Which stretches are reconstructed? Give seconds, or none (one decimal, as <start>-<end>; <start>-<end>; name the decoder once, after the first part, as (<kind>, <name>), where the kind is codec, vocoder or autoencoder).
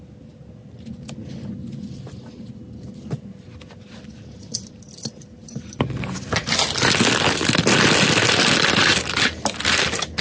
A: none